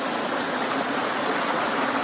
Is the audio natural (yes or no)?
no